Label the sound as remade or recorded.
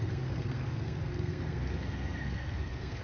remade